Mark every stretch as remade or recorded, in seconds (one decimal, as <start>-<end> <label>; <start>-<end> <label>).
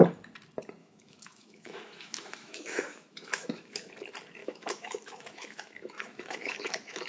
0.0-0.8 recorded; 0.8-3.9 remade; 3.9-4.4 recorded; 4.4-7.1 remade